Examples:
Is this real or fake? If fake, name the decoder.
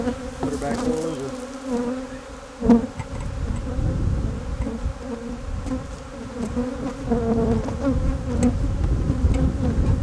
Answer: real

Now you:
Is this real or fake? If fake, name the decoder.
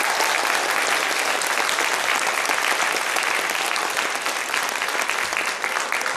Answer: real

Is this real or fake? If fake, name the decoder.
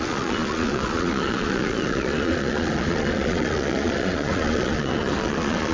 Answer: fake, vocoder, Vocos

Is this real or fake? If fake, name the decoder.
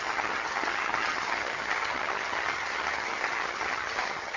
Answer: fake, vocoder, HiFi-GAN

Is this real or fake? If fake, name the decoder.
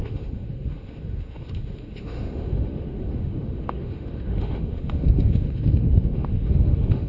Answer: fake, autoencoder, DAC-VAE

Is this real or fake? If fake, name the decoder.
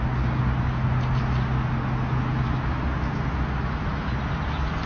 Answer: real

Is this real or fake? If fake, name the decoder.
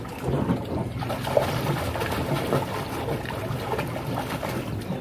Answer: real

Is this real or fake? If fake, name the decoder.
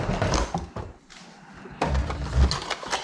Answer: real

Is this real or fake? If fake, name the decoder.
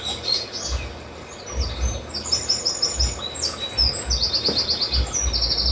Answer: real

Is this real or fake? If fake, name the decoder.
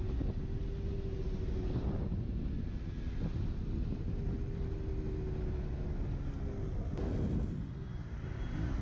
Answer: real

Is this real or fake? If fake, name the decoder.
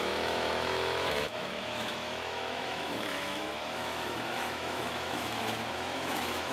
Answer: fake, autoencoder, DAC-VAE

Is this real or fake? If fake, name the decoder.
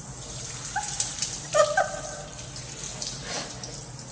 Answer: real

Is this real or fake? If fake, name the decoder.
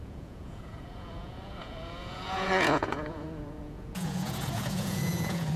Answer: fake, vocoder, Vocos